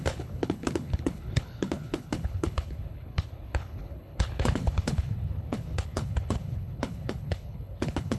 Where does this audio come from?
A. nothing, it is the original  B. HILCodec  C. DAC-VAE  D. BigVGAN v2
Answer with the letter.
B